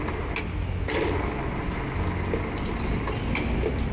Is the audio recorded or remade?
recorded